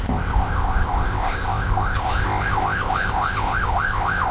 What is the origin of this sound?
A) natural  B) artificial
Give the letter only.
B